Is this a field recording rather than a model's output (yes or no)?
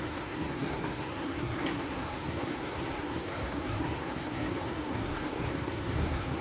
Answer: no